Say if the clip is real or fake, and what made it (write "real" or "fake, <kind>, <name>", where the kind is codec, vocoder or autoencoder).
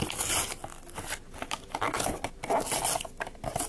real